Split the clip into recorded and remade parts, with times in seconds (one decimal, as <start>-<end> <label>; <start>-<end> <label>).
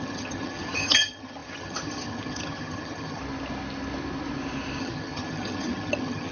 0.0-3.2 remade; 3.2-4.8 recorded; 4.8-6.3 remade